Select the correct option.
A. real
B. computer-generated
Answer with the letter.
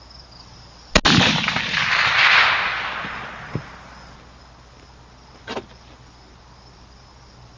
A